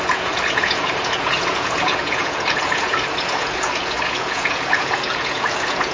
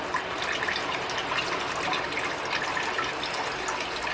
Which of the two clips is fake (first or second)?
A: first